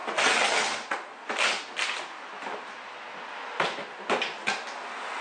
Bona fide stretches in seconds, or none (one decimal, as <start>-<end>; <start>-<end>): 0.0-5.2